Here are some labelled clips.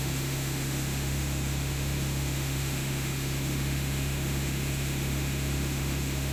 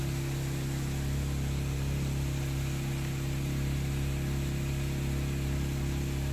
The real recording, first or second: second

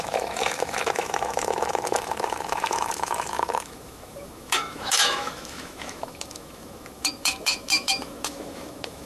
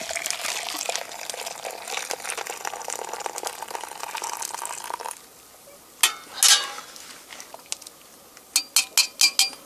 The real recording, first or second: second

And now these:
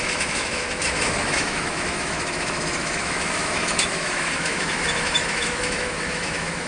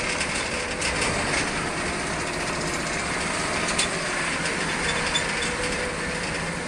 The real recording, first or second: second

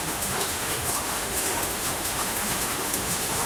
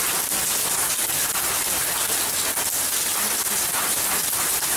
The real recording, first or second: second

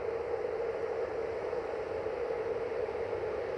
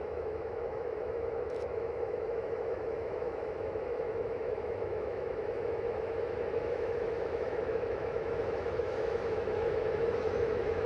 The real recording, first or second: first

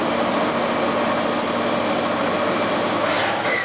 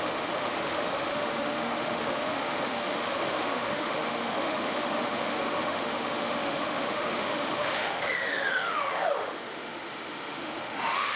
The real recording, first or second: first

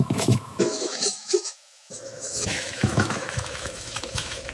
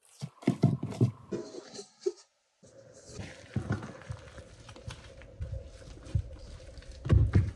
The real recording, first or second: second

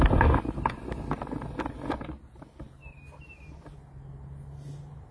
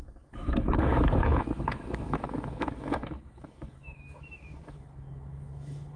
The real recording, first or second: first